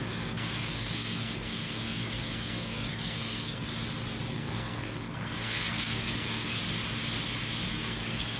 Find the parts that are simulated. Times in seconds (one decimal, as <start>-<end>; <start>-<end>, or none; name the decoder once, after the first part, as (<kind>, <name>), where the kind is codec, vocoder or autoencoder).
0.0-3.7 (codec, SNAC); 4.3-6.6; 7.7-8.4